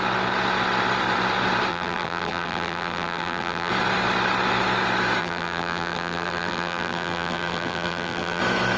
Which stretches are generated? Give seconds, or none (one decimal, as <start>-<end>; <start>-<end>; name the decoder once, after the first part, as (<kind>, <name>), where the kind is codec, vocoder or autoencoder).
1.7-3.7 (vocoder, BigVGAN v2); 5.2-8.4